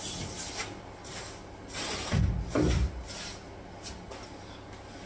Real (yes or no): yes